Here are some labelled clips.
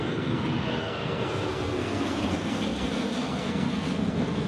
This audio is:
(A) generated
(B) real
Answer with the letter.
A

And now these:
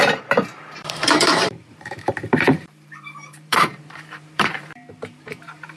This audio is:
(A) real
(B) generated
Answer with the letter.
B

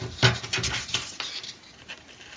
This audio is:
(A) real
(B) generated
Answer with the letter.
A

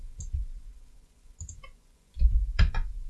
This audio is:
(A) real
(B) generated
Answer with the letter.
B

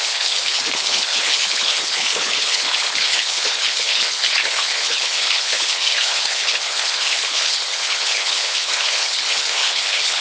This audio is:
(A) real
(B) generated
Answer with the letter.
B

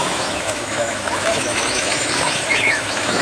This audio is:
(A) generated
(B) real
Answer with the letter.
A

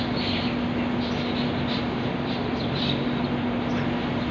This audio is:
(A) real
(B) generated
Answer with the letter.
A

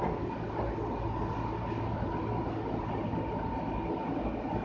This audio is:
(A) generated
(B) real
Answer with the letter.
B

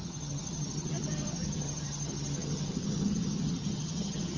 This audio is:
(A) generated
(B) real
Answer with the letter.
A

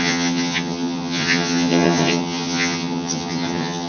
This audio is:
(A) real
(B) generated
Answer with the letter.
B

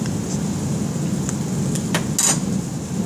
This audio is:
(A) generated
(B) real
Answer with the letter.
B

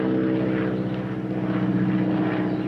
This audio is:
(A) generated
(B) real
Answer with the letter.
B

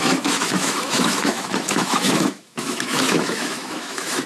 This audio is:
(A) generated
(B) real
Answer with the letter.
A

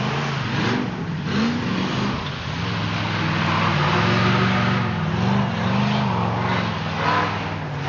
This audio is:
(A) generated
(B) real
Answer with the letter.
B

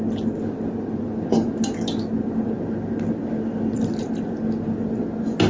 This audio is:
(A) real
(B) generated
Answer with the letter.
A